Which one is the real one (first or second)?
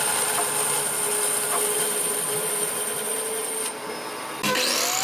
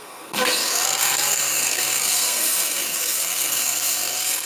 first